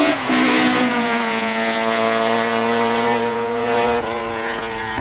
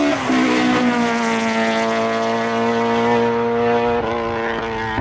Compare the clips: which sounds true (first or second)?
second